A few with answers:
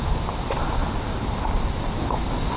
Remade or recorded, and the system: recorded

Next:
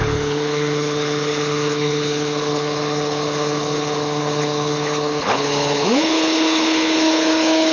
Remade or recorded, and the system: remade, codec, HILCodec